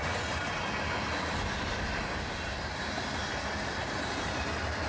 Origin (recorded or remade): recorded